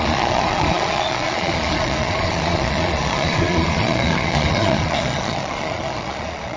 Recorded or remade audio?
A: remade